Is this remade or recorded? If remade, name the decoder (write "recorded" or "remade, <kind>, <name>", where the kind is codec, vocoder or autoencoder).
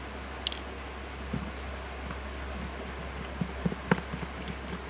recorded